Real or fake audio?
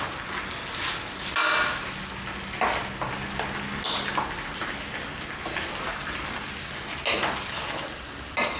real